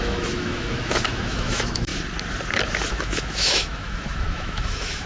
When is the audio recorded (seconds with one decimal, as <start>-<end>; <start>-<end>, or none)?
1.9-2.9